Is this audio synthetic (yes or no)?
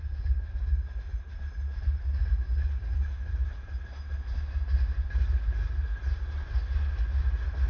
no